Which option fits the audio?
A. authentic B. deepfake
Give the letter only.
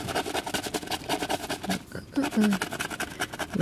A